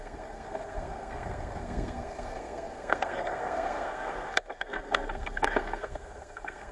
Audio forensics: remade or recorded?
remade